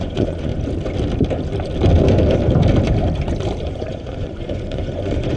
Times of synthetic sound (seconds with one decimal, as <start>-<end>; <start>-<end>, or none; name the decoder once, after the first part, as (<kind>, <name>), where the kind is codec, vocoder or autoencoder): 0.0-0.5 (vocoder, Vocos); 3.6-5.4